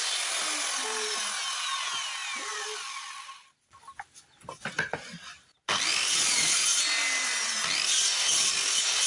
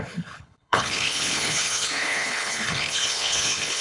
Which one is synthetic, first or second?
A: second